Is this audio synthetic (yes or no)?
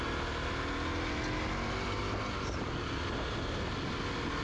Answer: no